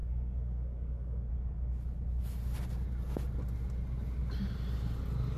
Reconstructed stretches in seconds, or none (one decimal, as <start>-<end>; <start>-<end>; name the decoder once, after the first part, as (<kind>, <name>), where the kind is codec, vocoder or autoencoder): 0.0-1.3 (codec, SNAC)